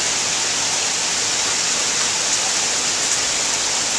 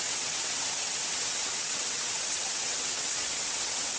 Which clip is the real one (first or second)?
first